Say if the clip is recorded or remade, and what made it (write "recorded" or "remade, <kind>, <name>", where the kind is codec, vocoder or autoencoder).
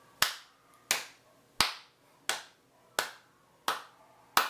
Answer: recorded